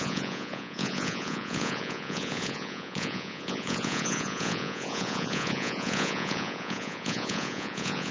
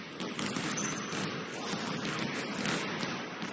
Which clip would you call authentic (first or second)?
second